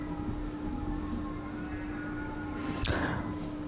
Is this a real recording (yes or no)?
yes